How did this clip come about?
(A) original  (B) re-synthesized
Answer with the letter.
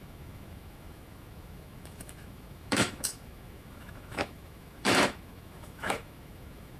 B